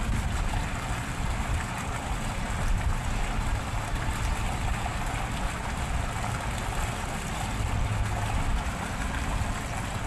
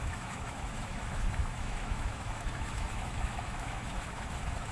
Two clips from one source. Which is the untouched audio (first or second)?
first